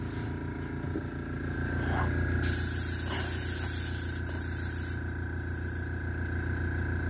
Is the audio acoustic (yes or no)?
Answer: yes